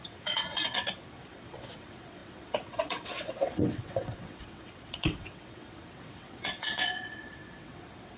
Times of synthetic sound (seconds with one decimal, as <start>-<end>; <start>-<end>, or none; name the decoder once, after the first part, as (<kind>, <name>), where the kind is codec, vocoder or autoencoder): 0.0-8.2 (vocoder, WaveNeXt)